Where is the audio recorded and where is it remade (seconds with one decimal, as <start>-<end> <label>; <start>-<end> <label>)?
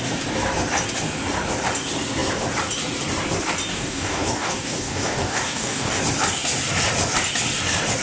0.0-3.7 recorded; 3.7-6.0 remade; 6.0-8.0 recorded